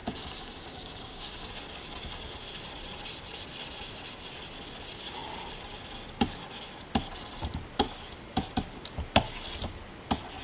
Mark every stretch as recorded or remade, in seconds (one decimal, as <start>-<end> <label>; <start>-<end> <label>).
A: 0.0-1.5 remade; 1.5-10.4 recorded